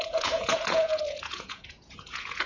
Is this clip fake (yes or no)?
yes